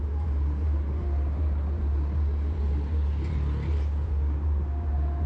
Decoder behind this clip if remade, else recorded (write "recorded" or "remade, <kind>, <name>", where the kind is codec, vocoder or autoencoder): recorded